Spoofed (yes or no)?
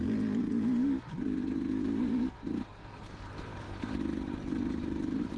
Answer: no